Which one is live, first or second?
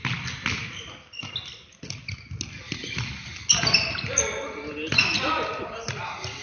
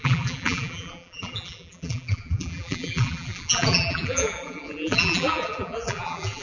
first